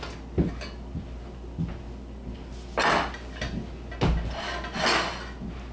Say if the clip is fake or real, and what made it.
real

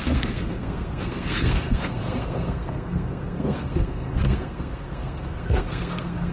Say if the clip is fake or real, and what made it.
fake, codec, SNAC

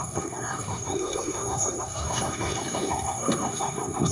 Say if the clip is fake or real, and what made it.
fake, codec, SNAC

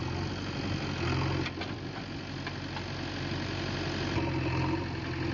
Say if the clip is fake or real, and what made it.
real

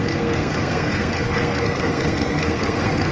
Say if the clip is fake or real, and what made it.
fake, codec, SNAC